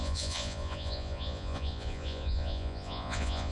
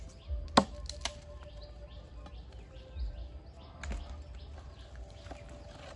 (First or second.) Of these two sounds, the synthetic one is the first